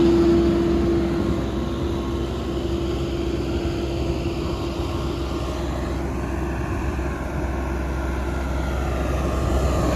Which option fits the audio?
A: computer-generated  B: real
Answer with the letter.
B